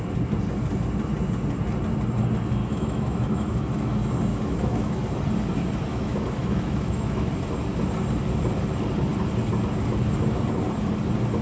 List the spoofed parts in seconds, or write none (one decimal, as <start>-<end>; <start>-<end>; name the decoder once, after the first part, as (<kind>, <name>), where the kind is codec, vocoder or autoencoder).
2.6-3.9 (autoencoder, DAC-VAE); 4.3-5.0; 5.9-7.3